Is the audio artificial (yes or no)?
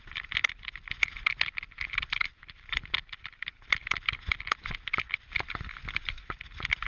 no